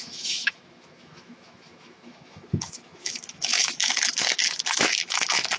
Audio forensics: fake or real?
fake